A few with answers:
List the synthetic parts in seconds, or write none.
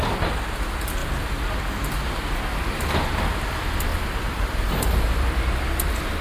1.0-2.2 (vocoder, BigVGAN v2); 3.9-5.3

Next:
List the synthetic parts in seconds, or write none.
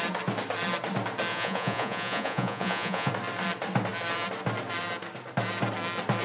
1.3-3.1 (vocoder, Vocos)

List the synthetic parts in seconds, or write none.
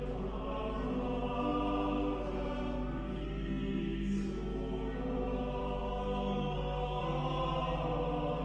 3.1-3.8 (codec, SNAC); 5.6-7.0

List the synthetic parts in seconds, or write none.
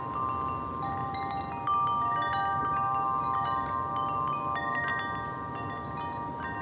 none